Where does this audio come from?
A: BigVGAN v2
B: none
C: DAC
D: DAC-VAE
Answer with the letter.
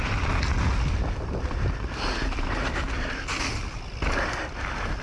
B